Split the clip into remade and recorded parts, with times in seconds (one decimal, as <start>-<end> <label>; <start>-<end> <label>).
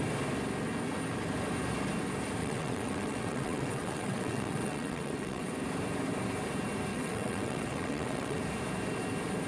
0.0-2.4 recorded; 2.4-5.5 remade; 5.5-6.9 recorded; 6.9-8.4 remade; 8.4-9.5 recorded